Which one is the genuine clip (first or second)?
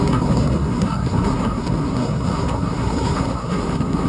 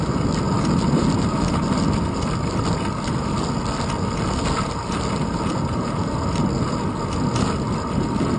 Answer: second